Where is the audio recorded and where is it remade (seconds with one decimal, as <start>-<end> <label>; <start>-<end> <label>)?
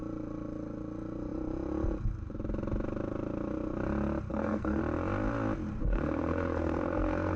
0.0-4.3 recorded; 4.3-4.8 remade; 4.8-5.8 recorded; 5.8-7.4 remade